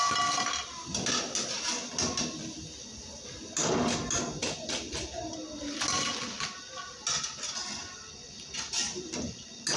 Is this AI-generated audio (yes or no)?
no